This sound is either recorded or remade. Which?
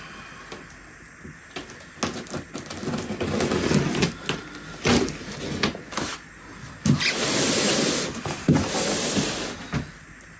recorded